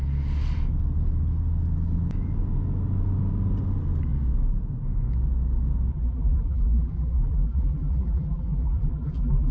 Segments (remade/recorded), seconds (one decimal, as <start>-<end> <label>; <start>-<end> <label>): 0.0-5.9 recorded; 5.9-9.5 remade